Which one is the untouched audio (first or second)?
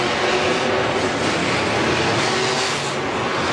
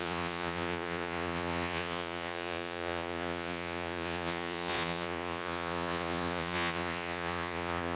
first